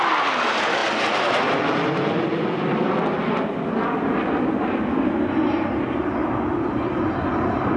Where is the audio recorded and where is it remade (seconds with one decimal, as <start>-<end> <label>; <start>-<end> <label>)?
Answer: 0.0-7.8 recorded